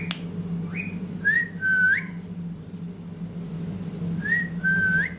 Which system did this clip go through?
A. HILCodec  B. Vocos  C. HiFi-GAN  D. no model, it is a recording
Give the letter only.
D